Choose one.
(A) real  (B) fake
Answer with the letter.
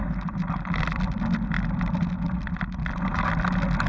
A